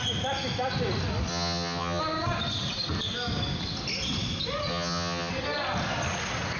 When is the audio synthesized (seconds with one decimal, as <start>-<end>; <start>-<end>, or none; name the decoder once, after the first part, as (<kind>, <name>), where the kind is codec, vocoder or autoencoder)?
1.3-2.0 (vocoder, HiFi-GAN); 4.7-5.3